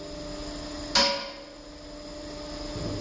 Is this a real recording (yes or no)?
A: yes